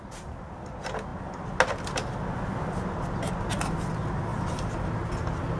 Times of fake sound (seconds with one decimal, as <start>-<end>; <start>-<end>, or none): none